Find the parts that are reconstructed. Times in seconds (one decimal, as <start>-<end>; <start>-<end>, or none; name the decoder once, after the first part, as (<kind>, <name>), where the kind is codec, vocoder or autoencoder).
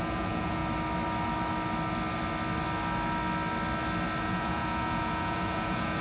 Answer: 0.0-0.6 (vocoder, Vocos); 4.2-6.0